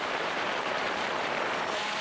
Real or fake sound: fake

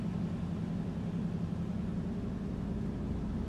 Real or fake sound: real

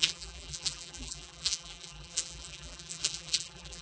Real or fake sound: fake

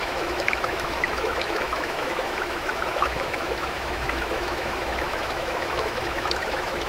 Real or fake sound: fake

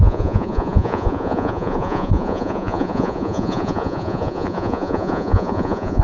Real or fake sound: fake